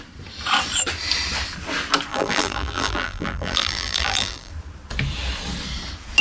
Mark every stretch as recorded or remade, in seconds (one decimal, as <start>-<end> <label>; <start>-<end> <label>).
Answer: 0.0-2.1 recorded; 2.1-4.5 remade; 4.5-6.2 recorded